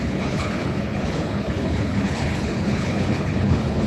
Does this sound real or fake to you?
fake